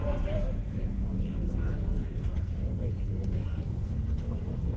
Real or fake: fake